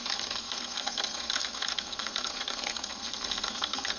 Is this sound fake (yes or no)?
yes